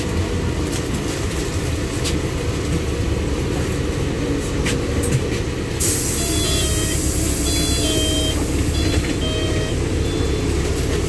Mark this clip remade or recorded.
recorded